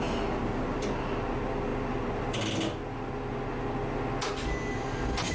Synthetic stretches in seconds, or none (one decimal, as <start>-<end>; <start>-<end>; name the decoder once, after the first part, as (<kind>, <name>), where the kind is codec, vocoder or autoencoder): none

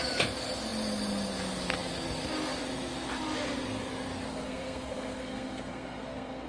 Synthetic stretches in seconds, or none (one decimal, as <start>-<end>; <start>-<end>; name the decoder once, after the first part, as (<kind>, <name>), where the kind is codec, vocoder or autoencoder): 4.3-6.5 (codec, SNAC)

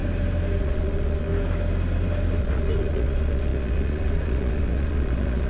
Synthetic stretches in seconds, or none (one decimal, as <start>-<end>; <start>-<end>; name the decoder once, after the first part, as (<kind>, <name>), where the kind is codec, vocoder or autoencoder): 0.6-1.3 (vocoder, Vocos); 2.4-5.5